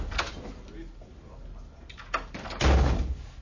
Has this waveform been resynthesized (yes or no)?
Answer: no